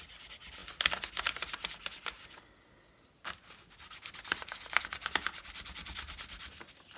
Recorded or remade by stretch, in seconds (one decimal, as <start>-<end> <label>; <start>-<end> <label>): 0.0-7.0 recorded